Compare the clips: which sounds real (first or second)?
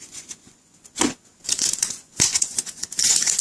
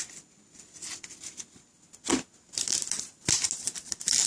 second